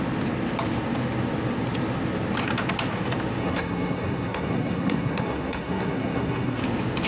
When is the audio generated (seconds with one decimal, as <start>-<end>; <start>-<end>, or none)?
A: 3.4-6.6